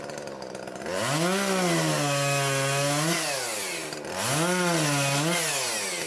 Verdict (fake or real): real